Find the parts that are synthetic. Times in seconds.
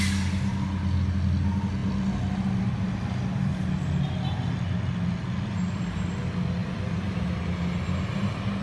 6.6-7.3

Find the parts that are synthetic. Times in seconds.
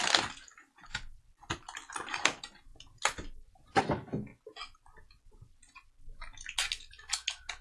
none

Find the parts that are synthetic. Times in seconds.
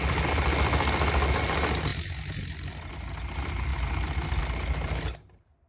none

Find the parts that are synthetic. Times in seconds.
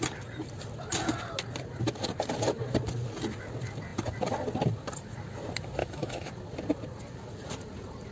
5.8-6.3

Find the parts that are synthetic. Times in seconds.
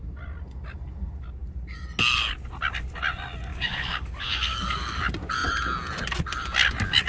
3.5-5.0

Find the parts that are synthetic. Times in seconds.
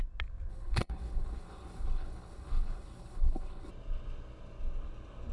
0.5-3.7